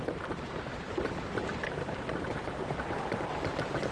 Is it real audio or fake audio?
fake